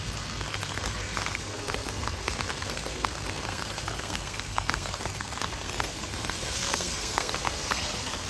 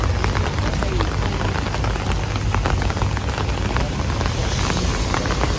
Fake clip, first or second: first